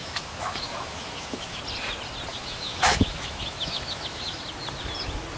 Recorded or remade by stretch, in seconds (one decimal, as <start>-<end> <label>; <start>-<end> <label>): 0.0-1.6 remade; 1.6-2.3 recorded; 2.3-4.4 remade; 4.4-5.4 recorded